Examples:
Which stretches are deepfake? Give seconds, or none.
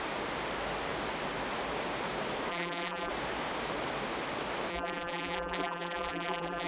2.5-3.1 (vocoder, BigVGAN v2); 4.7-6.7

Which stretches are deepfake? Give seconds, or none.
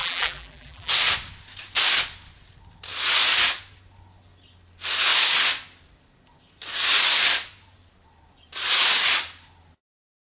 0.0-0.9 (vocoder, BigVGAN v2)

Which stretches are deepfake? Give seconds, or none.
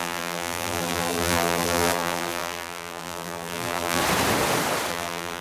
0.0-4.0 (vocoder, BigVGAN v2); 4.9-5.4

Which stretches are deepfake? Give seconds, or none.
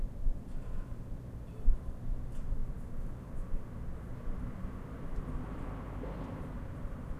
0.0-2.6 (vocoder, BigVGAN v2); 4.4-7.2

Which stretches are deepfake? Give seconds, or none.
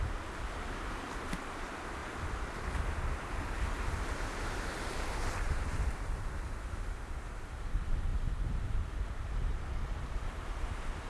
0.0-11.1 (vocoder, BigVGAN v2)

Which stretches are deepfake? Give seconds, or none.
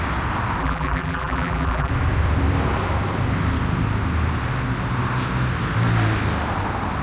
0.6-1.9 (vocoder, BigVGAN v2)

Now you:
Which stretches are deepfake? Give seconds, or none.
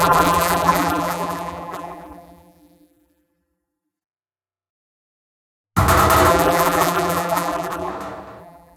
0.0-4.7 (vocoder, BigVGAN v2); 6.3-7.9; 8.4-8.8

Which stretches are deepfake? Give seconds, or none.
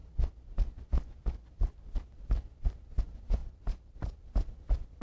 3.4-4.3 (vocoder, BigVGAN v2)